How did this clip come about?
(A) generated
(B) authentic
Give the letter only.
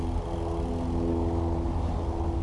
B